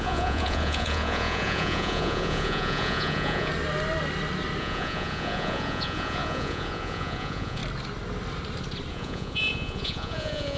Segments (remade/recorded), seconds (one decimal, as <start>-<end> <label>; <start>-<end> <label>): 0.0-3.5 remade; 3.5-4.6 recorded; 4.6-7.6 remade; 7.6-8.9 recorded; 8.9-10.6 remade